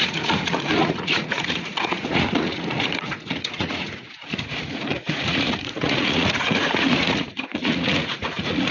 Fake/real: fake